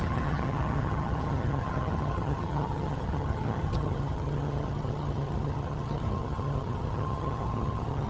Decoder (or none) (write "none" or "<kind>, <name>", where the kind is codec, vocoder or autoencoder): vocoder, HiFi-GAN